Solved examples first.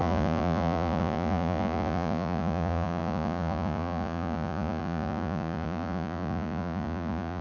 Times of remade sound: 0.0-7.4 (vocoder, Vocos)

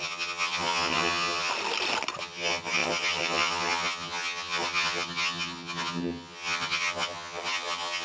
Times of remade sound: 0.0-1.5 (vocoder, HiFi-GAN); 2.2-8.0

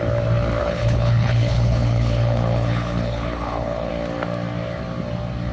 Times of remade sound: 0.6-3.9 (codec, HILCodec)

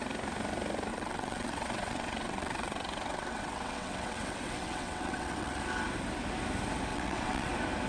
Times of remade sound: 0.9-5.6 (vocoder, WaveNeXt); 6.9-7.5